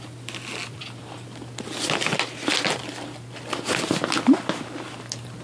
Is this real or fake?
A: real